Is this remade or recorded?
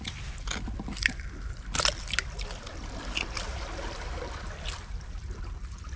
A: recorded